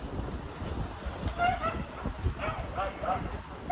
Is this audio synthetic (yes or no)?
no